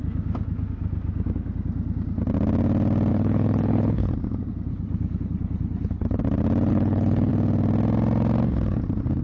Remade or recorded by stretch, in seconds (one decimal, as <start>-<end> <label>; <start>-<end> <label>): 0.0-3.1 recorded; 3.1-4.1 remade; 4.1-4.7 recorded; 4.7-6.2 remade; 6.2-6.7 recorded; 6.7-7.3 remade; 7.3-9.2 recorded